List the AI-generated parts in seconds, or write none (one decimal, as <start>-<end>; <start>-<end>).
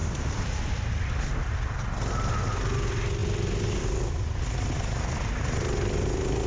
none